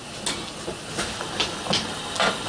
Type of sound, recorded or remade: recorded